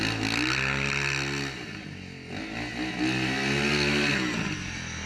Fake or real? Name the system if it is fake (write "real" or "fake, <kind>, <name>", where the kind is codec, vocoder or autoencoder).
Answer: real